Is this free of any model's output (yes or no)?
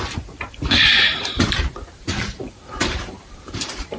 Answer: no